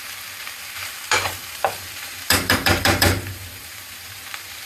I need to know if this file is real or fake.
fake